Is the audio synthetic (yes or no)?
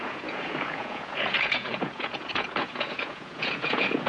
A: yes